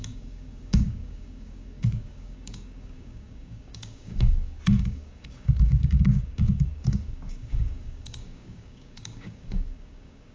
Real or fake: fake